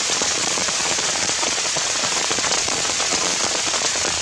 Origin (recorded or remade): remade